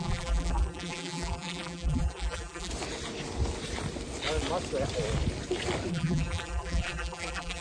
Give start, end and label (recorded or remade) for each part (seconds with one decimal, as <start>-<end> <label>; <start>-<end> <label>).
0.0-2.7 remade; 2.7-5.9 recorded; 5.9-7.6 remade